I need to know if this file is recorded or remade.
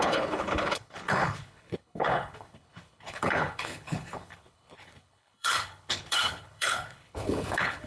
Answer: remade